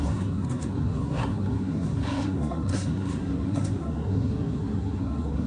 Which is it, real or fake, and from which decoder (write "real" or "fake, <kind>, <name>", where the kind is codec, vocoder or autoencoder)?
fake, codec, SNAC